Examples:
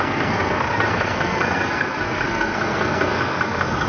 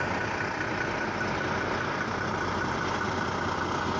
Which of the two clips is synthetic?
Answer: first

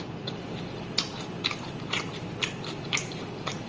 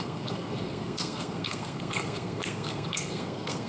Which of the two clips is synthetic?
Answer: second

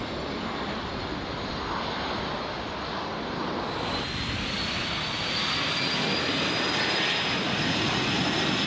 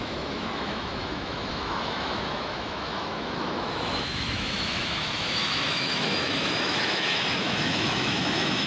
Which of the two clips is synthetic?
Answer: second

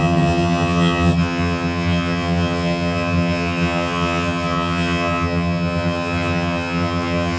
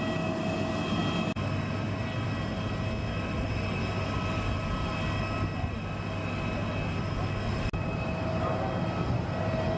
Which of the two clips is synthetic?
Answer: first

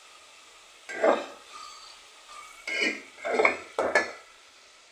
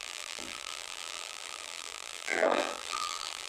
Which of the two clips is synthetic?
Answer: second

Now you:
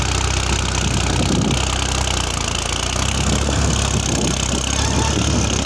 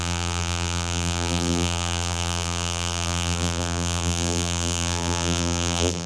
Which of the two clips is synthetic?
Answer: second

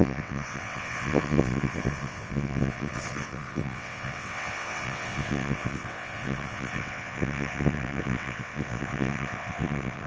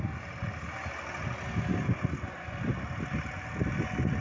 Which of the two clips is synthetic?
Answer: first